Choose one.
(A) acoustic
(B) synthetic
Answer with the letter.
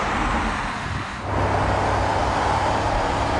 A